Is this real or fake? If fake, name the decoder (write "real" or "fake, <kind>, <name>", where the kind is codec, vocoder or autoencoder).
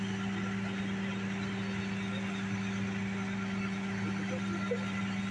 real